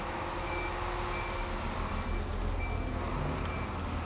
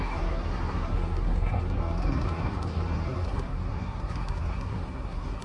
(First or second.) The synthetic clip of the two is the second